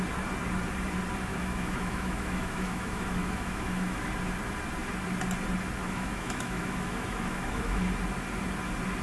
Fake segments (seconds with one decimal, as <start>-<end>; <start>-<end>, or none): 1.3-4.1; 5.8-7.8